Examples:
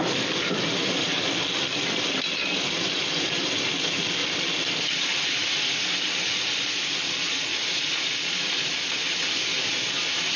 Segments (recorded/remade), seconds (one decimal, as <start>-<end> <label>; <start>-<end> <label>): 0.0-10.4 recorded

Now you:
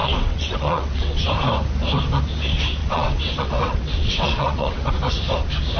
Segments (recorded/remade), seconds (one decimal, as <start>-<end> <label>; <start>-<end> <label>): 0.0-1.3 remade; 1.3-2.8 recorded; 2.8-4.9 remade; 4.9-5.8 recorded

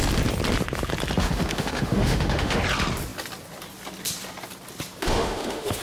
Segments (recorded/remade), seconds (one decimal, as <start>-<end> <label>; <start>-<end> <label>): 0.0-1.2 recorded; 1.2-2.6 remade; 2.6-5.0 recorded; 5.0-5.8 remade

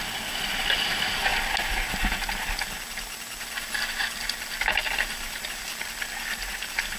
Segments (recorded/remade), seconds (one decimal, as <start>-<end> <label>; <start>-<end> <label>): 0.0-7.0 recorded

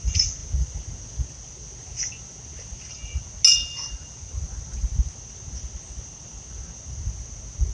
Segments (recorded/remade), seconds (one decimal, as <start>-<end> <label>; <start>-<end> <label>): 0.0-7.7 recorded

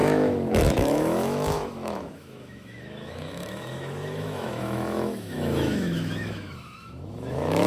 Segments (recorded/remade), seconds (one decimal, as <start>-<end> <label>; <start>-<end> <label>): 0.0-7.7 remade